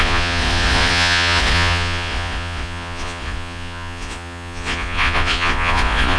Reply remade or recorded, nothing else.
remade